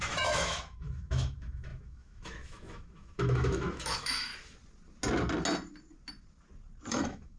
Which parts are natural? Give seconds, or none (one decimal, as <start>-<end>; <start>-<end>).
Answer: 4.3-6.9